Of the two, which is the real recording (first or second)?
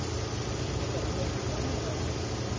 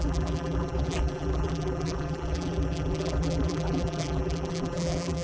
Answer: first